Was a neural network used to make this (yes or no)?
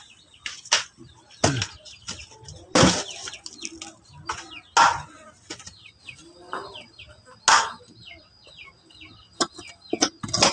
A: no